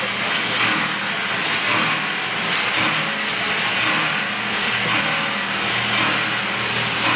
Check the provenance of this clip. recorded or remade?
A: recorded